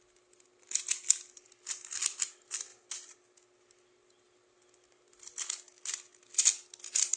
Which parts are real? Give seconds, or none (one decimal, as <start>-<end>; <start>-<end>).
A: 0.0-7.2